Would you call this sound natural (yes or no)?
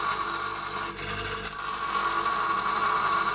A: yes